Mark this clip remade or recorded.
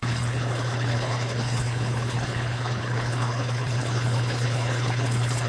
remade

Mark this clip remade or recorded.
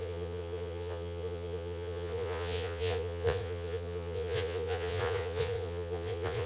remade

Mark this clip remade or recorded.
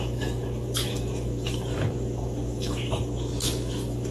remade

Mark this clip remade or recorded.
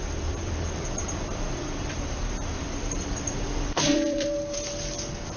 remade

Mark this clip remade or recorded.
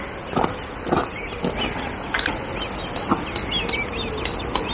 recorded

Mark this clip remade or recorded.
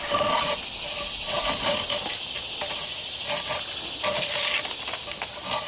recorded